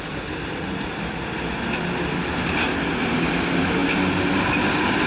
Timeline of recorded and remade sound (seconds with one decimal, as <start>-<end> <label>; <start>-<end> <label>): 0.0-5.1 recorded